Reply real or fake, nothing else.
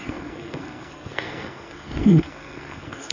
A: fake